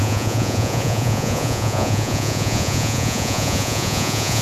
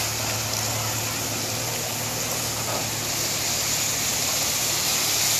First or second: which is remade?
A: first